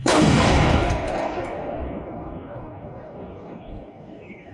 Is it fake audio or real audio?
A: fake